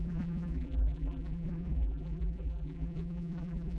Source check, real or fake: fake